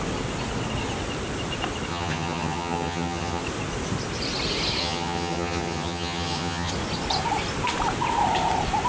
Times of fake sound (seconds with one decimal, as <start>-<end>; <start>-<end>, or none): 1.9-3.4; 4.8-6.7